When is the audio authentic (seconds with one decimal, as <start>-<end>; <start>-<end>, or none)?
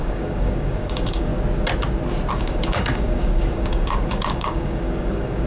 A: 1.3-2.3